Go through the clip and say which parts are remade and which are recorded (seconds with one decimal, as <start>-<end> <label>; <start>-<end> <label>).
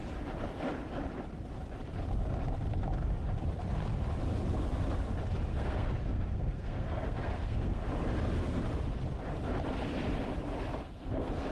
0.0-5.5 recorded; 5.5-7.9 remade; 7.9-10.8 recorded; 10.8-11.5 remade